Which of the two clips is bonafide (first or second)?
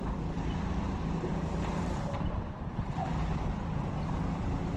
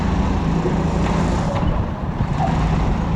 second